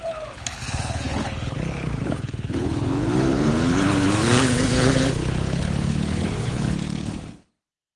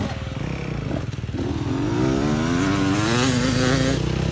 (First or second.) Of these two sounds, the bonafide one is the second